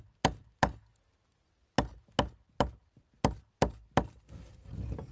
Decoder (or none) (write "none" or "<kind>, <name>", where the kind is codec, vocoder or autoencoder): none